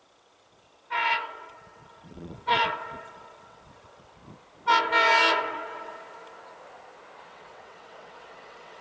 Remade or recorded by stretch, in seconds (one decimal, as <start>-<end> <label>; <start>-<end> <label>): 0.0-4.2 remade; 4.2-5.4 recorded; 5.4-5.9 remade; 5.9-7.3 recorded; 7.3-8.8 remade